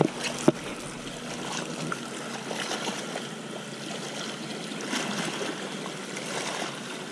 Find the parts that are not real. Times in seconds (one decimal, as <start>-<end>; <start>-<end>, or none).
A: none